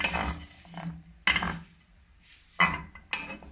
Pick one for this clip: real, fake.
real